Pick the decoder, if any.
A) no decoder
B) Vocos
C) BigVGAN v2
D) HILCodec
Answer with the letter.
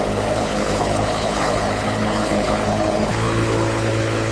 D